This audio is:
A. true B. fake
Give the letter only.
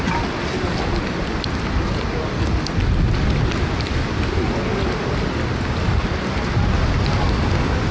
A